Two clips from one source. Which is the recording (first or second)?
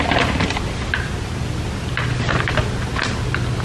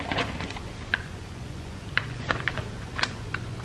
first